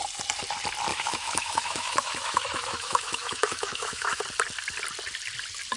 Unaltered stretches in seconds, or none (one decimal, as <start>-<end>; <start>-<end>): 0.0-0.9; 4.2-5.8